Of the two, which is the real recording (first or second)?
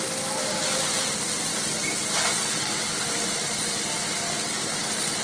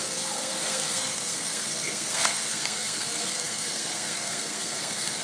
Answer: first